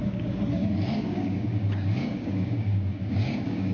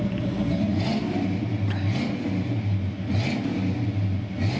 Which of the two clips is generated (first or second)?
first